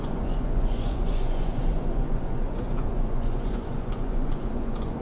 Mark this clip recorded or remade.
remade